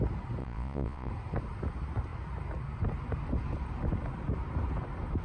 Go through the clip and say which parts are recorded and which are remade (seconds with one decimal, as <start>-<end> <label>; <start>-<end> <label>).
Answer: 0.0-0.4 recorded; 0.4-1.1 remade; 1.1-5.2 recorded